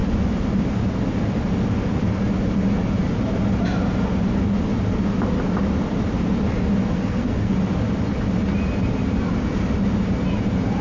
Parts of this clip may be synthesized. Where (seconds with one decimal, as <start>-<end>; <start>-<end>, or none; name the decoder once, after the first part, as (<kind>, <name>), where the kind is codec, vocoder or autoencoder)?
6.9-7.5 (codec, SNAC)